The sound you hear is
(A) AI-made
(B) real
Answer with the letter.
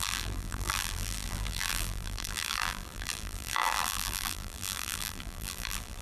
A